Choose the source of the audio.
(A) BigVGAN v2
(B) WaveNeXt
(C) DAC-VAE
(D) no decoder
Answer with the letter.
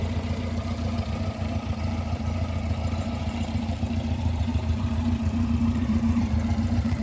A